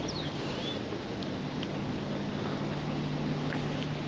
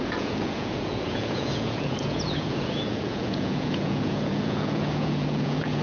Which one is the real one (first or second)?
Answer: first